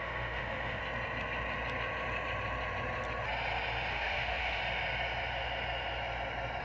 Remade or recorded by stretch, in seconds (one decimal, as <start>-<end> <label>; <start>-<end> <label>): 0.0-0.8 remade; 0.8-3.9 recorded; 3.9-4.6 remade; 4.6-6.6 recorded